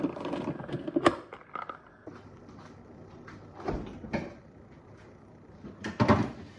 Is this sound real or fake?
real